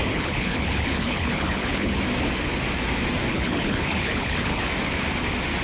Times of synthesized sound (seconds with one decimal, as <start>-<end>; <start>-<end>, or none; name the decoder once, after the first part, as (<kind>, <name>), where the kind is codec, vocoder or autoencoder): 0.0-1.9 (codec, HILCodec); 3.3-4.7